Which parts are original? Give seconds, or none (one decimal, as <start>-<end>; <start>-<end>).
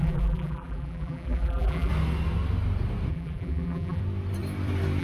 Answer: 1.9-3.1; 4.0-5.0